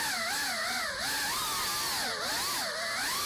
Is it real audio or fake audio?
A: real